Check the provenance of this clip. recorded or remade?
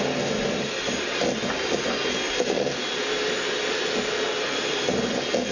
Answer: recorded